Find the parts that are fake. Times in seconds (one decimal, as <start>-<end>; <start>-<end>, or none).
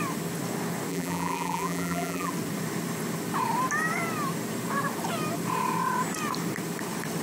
0.9-2.3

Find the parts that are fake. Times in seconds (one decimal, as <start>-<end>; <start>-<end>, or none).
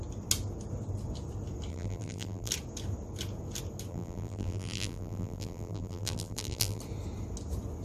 1.7-2.5; 3.9-6.8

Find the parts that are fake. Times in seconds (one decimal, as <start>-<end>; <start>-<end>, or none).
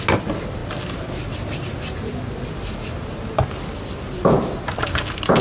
none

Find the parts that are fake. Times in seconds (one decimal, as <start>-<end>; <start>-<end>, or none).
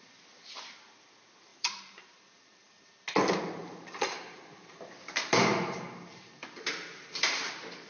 1.5-2.9; 3.6-7.5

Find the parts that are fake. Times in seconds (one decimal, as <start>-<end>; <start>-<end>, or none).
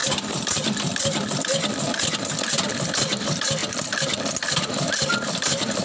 0.0-3.0; 3.6-5.8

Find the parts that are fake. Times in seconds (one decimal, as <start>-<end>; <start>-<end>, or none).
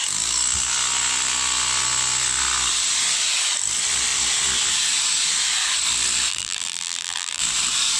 6.3-7.4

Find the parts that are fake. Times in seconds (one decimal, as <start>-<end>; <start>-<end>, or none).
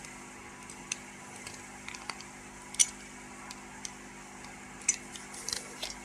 none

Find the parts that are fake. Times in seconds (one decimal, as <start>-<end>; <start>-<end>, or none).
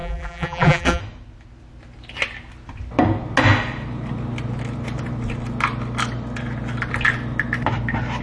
0.0-1.0